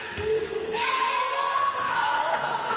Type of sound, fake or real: fake